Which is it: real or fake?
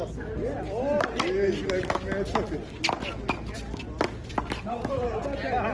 real